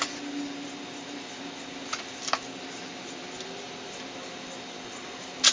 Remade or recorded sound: recorded